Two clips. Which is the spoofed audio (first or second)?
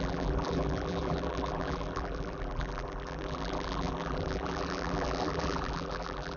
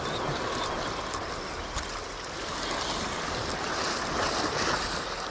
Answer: first